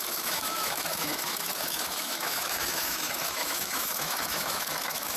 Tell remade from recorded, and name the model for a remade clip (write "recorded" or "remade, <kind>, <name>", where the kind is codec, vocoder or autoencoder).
remade, autoencoder, DAC-VAE